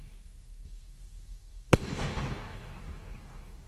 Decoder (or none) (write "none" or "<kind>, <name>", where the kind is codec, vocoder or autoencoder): codec, DAC